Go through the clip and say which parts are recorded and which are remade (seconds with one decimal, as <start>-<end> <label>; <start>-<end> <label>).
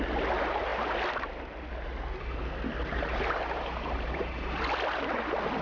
0.0-2.8 recorded; 2.8-4.6 remade; 4.6-5.6 recorded